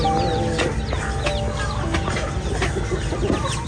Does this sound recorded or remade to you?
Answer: recorded